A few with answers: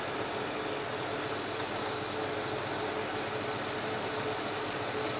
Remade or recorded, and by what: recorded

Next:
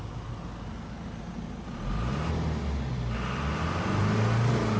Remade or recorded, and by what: recorded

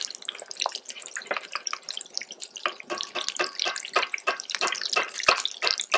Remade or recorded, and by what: remade, vocoder, BigVGAN v2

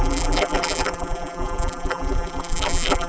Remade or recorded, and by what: remade, vocoder, BigVGAN v2